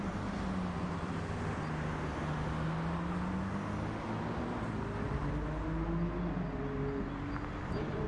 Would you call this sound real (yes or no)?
yes